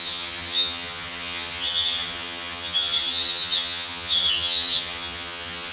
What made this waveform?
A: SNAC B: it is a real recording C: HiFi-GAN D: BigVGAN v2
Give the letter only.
C